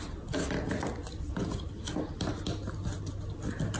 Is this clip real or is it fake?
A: real